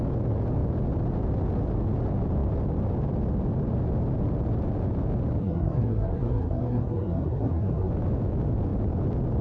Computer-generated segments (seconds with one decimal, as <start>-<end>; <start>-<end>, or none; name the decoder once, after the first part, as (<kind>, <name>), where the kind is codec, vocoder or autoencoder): 5.4-7.9 (codec, SNAC)